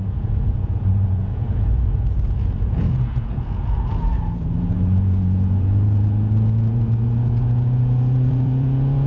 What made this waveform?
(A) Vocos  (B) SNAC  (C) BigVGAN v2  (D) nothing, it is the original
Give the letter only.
A